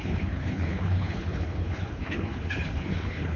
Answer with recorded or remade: remade